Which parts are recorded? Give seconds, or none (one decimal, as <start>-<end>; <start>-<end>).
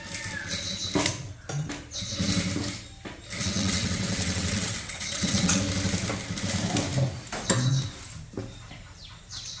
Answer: 0.0-3.4; 5.6-9.6